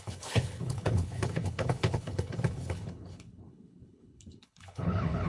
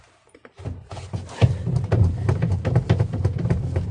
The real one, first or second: second